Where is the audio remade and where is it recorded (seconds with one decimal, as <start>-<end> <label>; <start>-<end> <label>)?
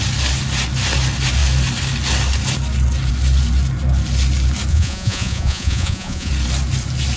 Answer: 0.0-4.7 recorded; 4.7-6.3 remade; 6.3-7.2 recorded